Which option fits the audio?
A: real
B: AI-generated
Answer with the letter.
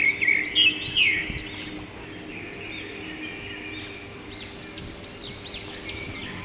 A